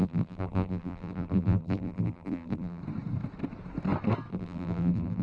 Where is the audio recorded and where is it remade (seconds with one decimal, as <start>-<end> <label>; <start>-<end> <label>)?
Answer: 0.0-2.8 remade; 2.8-4.3 recorded; 4.3-5.2 remade